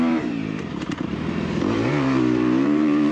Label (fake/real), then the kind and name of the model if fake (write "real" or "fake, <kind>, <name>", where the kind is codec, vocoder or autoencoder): fake, vocoder, BigVGAN v2